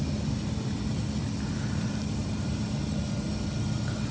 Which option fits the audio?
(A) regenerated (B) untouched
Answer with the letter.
B